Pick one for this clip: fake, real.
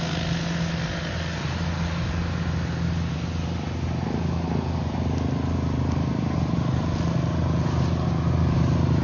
real